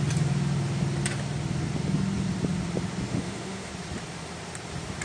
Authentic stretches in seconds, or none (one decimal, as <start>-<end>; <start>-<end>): 0.0-3.1; 3.7-5.0

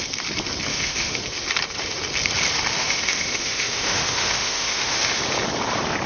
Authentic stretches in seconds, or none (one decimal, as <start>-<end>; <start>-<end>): 0.0-0.7; 1.2-2.8; 5.2-6.1

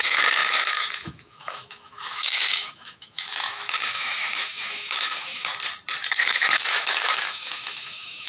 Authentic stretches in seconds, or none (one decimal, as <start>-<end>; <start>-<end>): 5.5-6.2

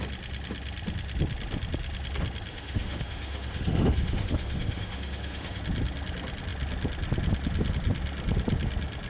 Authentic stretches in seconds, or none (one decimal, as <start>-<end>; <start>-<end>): 0.0-2.5; 5.6-9.1

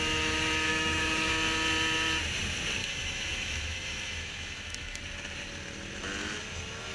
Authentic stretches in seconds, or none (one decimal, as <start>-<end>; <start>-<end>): 0.0-0.7; 1.3-2.8; 5.0-6.9

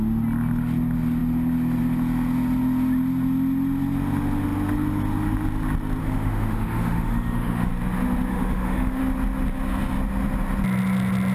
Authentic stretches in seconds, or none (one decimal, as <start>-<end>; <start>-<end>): 0.0-6.0; 7.7-8.3; 9.0-11.3